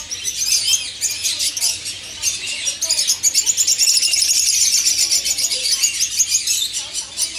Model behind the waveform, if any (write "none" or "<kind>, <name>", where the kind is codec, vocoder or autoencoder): none